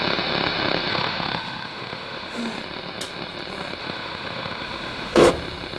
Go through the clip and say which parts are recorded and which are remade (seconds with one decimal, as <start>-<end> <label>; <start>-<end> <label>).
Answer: 0.0-0.9 recorded; 0.9-2.4 remade; 2.4-3.8 recorded; 3.8-5.3 remade; 5.3-5.8 recorded